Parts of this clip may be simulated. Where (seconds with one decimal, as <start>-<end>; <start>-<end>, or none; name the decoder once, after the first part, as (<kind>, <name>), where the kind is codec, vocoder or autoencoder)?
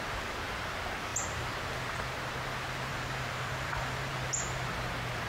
2.9-4.2 (vocoder, BigVGAN v2)